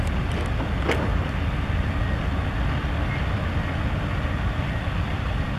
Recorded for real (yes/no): yes